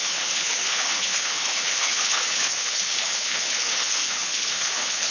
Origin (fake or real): fake